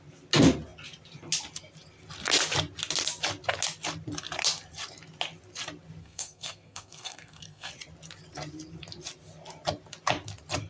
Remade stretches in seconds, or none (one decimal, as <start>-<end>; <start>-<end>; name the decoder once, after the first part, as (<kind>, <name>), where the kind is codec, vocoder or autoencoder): 6.0-7.7 (codec, SNAC)